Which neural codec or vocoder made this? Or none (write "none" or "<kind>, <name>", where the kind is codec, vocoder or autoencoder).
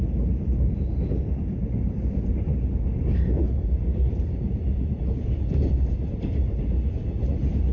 vocoder, BigVGAN v2